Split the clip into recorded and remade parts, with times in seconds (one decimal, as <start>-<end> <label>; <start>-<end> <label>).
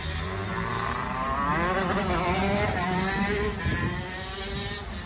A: 0.0-5.1 recorded